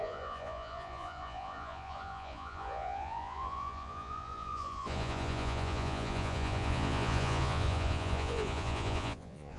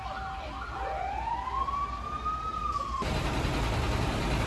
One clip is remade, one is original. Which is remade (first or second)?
first